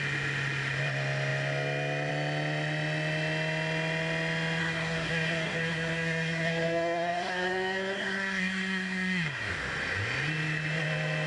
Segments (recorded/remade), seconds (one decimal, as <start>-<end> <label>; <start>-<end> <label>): 0.0-4.6 recorded; 4.6-9.5 remade; 9.5-11.3 recorded